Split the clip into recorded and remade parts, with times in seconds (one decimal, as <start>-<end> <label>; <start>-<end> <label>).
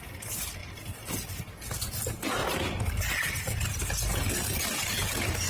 0.0-0.6 recorded; 0.6-1.3 remade; 1.3-2.4 recorded; 2.4-3.8 remade; 3.8-5.5 recorded